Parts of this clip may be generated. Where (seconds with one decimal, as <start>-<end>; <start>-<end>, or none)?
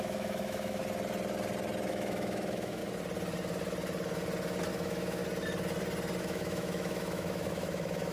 0.0-0.8; 1.9-2.8; 4.7-5.2; 6.2-8.1